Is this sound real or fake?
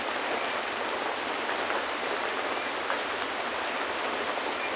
real